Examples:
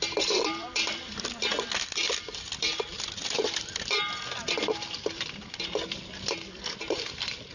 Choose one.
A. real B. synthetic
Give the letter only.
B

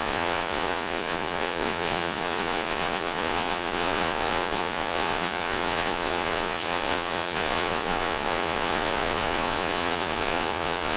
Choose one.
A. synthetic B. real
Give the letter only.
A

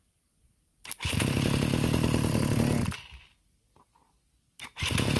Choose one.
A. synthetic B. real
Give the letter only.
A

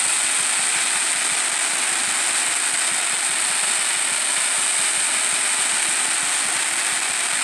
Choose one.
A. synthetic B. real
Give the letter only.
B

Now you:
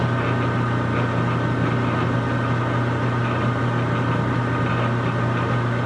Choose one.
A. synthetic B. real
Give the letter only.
B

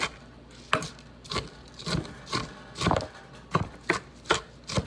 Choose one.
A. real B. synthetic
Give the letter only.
A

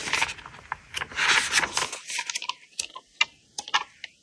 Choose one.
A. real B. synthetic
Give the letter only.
A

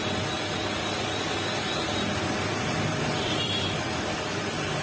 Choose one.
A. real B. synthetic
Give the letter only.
A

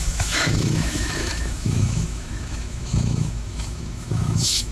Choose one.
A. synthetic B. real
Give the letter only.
A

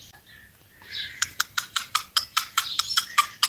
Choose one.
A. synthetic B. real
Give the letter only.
A